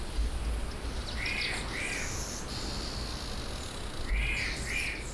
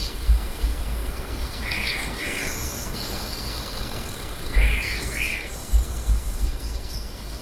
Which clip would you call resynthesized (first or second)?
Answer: second